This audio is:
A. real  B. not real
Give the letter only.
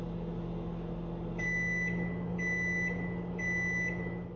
A